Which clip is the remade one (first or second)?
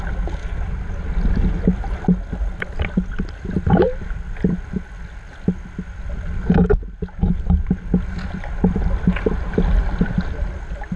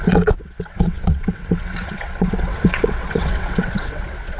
second